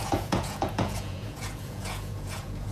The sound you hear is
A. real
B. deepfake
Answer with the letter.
B